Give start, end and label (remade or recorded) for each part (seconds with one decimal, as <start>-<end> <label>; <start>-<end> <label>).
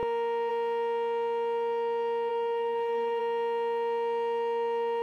0.0-2.3 recorded; 2.3-3.2 remade; 3.2-5.0 recorded